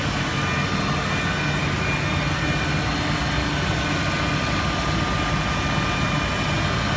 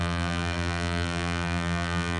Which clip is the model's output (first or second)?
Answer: second